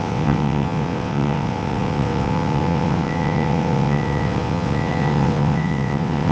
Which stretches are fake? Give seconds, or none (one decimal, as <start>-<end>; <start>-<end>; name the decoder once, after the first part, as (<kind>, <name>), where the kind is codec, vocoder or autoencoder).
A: 0.0-6.3 (vocoder, WaveNeXt)